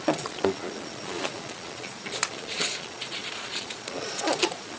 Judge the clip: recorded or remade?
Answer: remade